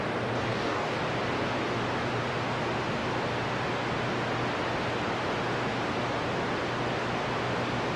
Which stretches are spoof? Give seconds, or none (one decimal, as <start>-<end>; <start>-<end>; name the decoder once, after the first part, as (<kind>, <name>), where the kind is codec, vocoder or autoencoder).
0.5-1.0 (codec, DAC)

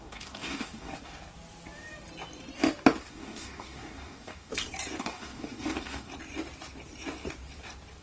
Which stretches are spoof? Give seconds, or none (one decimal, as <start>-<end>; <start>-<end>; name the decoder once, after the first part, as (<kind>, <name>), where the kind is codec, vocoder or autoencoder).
0.0-0.9 (codec, DAC); 3.1-4.5; 5.0-6.1

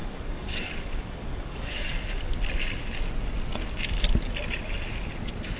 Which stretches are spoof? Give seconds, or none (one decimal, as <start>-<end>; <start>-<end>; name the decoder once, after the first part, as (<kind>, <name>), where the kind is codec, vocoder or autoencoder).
0.0-2.3 (codec, DAC)

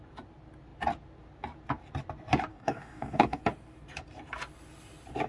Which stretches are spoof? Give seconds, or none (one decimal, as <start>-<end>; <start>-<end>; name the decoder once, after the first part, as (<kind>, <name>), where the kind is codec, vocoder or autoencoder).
2.5-3.4 (codec, DAC)

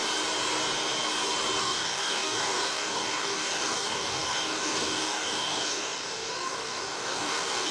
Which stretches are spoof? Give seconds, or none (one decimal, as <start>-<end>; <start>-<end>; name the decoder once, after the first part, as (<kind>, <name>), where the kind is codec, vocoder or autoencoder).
1.6-7.7 (codec, DAC)

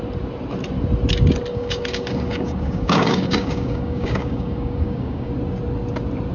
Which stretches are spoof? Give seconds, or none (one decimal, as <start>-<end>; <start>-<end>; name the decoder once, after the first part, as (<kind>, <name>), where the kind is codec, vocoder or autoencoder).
1.5-5.3 (codec, DAC)

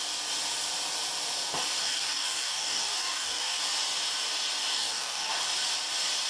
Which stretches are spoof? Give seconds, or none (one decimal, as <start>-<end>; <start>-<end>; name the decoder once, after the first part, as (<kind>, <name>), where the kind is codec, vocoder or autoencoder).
1.8-3.6 (codec, DAC); 4.7-5.3

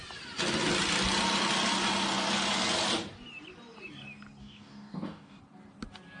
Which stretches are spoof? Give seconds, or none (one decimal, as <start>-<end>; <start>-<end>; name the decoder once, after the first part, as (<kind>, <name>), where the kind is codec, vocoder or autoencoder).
4.4-5.4 (codec, DAC)